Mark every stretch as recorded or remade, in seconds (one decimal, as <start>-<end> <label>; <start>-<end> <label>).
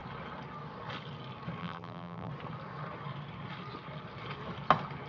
0.0-1.6 recorded; 1.6-2.3 remade; 2.3-5.1 recorded